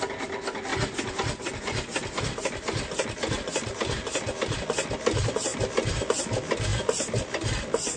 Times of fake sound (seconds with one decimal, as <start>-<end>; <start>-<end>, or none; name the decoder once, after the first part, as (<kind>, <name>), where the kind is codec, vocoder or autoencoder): none